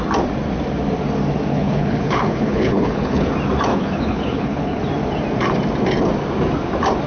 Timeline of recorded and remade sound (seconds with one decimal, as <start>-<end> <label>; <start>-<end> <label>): 0.0-1.5 recorded; 1.5-3.3 remade; 3.3-3.7 recorded; 3.7-4.8 remade; 4.8-7.1 recorded